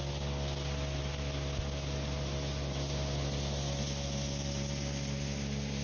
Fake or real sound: real